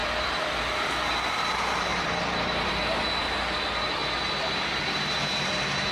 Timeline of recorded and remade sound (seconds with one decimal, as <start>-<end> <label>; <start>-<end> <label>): 0.0-0.6 remade; 0.6-1.9 recorded; 1.9-2.7 remade; 2.7-5.9 recorded